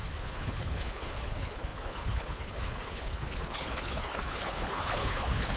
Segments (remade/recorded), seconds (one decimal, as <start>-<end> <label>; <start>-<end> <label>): 0.0-5.6 remade